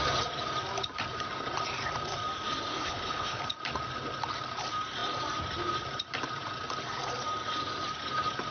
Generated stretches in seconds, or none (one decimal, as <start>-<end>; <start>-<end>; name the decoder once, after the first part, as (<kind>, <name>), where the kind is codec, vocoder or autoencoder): 2.7-3.4 (codec, HILCodec)